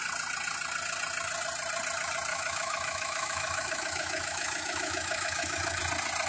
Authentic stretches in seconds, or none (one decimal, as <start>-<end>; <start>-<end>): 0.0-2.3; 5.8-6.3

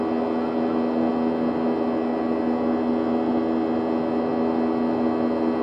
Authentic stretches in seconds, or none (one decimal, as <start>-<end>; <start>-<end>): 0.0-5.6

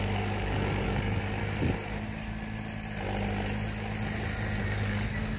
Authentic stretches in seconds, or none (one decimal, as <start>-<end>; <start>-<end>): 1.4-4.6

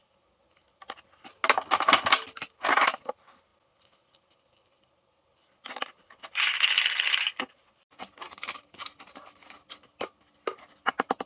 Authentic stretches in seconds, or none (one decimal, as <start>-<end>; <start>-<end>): 0.0-11.3

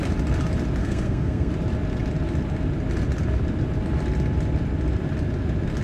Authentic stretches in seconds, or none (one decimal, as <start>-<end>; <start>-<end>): 0.0-0.8; 1.5-5.8

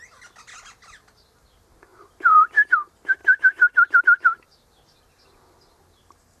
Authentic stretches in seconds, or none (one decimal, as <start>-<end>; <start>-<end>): 0.0-1.9; 2.8-3.2; 4.0-6.4

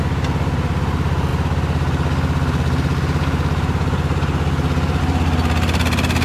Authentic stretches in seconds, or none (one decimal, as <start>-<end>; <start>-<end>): 0.0-6.2